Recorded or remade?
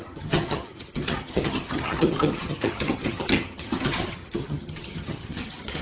remade